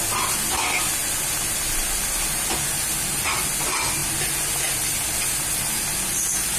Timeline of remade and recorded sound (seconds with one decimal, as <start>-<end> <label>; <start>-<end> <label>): 0.0-6.6 recorded